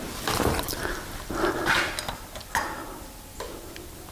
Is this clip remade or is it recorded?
recorded